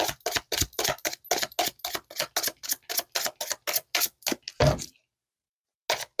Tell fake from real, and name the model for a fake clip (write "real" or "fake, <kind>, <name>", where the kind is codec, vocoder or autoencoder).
real